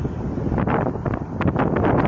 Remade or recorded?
recorded